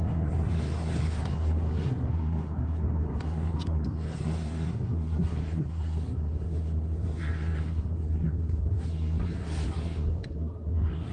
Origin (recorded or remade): remade